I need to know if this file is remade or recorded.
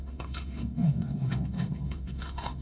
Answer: remade